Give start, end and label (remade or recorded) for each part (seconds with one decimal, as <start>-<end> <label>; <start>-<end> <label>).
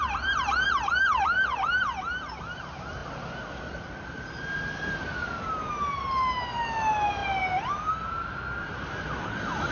0.0-9.7 recorded